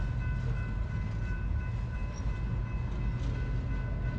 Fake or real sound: real